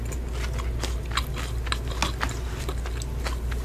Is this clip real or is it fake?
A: real